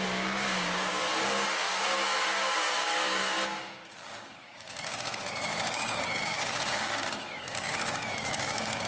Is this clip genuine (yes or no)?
no